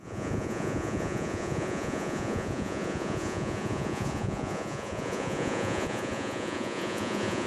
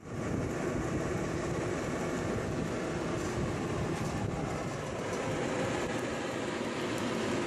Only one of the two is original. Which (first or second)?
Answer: second